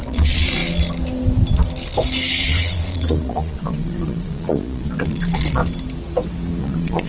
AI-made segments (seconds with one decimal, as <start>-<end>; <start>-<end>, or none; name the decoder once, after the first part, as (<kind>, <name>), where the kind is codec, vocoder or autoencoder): 0.0-0.6 (vocoder, Vocos); 2.4-5.6; 6.6-7.1